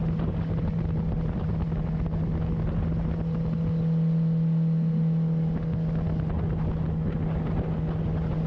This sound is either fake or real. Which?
real